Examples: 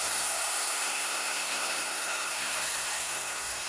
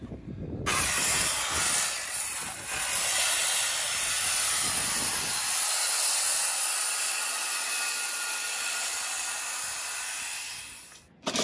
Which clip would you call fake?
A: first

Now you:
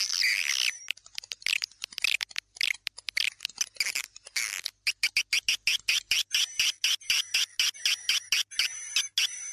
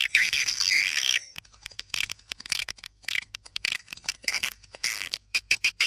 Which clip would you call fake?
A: second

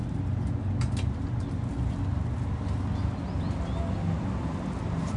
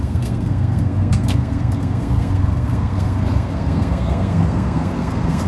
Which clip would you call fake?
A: second